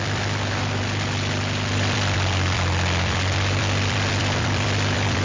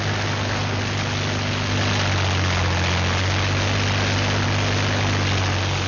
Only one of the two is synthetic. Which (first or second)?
first